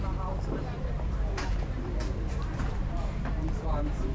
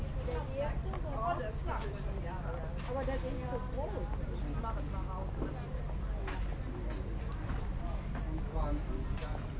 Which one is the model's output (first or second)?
first